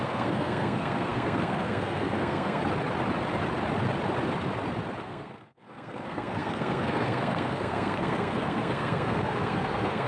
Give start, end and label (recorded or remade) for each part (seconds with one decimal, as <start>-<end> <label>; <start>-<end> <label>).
0.0-2.6 remade; 2.6-5.0 recorded; 5.0-10.1 remade